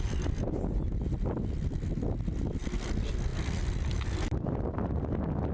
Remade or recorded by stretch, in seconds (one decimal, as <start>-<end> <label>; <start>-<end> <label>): 0.0-5.5 recorded